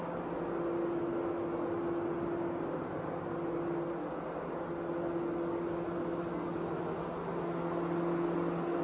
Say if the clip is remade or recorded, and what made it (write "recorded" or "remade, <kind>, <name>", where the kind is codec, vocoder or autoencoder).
recorded